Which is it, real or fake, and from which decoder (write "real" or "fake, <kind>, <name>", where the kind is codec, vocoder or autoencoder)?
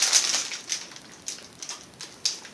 real